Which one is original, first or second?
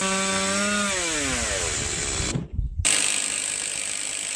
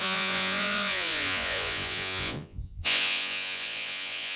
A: first